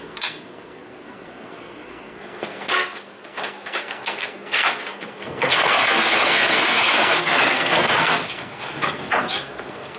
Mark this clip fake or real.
fake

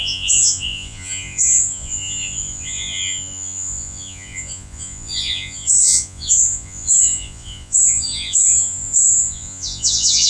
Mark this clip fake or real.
fake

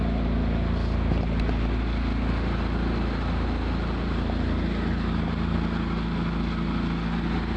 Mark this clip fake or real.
real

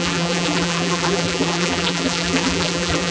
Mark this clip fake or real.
fake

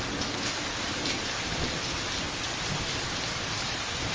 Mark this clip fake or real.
real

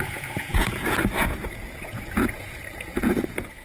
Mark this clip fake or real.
fake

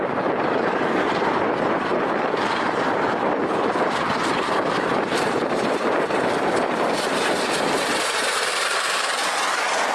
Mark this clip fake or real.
fake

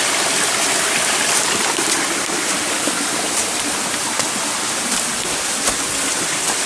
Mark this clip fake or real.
real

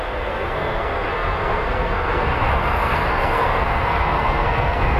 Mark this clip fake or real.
fake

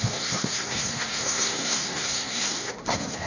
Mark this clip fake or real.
fake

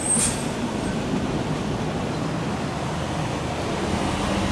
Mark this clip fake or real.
real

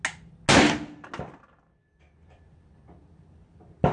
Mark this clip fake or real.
real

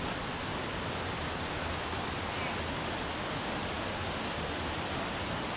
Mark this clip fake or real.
real